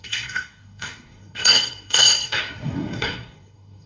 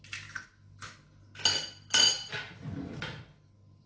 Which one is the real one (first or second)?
second